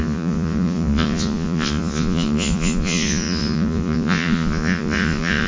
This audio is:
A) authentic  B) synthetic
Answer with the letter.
B